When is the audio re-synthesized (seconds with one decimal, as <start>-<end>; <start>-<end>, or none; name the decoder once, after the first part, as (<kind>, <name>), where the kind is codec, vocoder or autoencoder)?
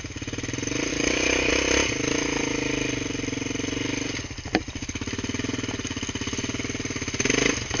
0.9-1.5 (codec, DAC)